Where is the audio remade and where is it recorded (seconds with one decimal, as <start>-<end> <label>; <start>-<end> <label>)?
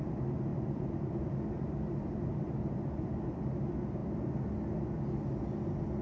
0.0-0.5 recorded; 0.5-3.5 remade; 3.5-6.0 recorded